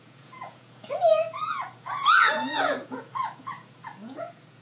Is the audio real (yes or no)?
no